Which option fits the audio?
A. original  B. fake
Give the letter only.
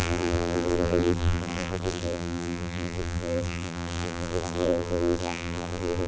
B